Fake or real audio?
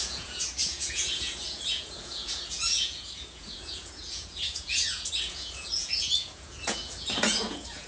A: fake